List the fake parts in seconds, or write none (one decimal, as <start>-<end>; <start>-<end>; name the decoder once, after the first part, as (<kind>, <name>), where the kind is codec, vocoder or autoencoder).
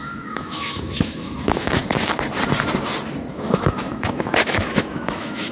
0.0-1.8 (autoencoder, DAC-VAE); 3.3-5.5